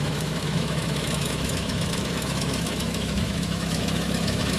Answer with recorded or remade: remade